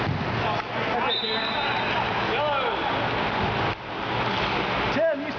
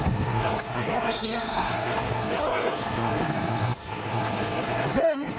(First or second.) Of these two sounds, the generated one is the second